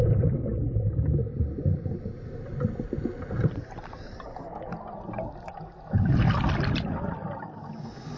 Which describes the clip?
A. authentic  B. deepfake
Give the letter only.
A